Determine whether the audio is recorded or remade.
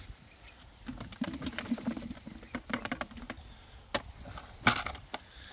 recorded